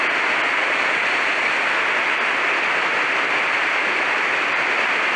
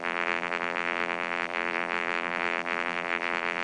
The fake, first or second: second